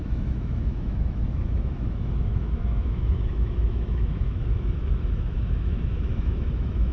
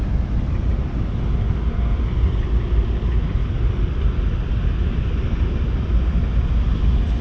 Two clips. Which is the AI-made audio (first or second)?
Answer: first